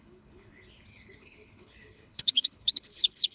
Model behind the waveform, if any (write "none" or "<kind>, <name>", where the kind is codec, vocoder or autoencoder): codec, HILCodec